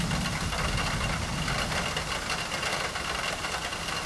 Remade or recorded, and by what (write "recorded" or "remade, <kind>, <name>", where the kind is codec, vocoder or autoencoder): recorded